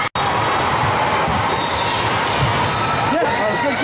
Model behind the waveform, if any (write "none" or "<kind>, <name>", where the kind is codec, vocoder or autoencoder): none